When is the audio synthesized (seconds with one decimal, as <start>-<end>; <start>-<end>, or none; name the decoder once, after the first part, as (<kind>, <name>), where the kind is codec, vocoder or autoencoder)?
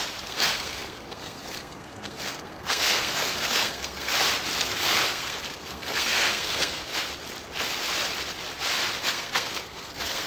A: 0.0-4.1 (codec, SNAC); 4.6-6.9; 9.0-10.3